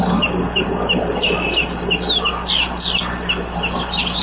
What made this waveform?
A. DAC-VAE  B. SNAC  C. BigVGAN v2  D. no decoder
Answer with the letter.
D